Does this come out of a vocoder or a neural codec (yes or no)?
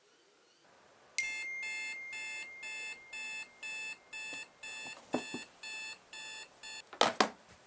no